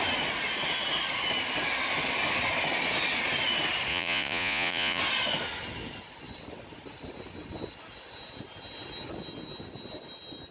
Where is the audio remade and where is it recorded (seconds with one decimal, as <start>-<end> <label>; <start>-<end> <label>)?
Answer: 0.0-3.9 recorded; 3.9-5.0 remade; 5.0-10.5 recorded